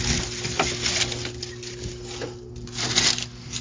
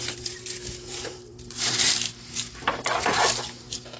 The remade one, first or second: second